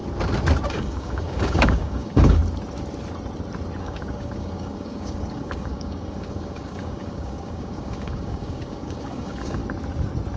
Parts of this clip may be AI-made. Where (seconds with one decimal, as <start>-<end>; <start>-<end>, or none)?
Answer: 0.7-2.4; 3.8-9.6